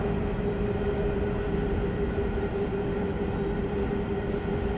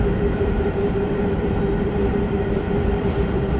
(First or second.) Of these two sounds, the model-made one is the second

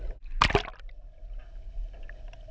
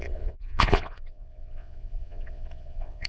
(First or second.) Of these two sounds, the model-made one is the second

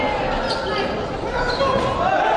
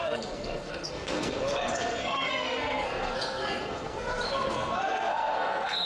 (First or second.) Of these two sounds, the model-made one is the second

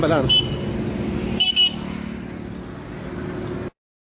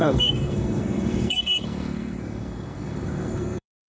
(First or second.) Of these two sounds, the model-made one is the second